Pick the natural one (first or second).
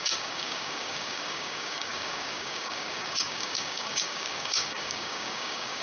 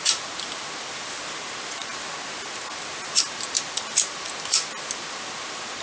second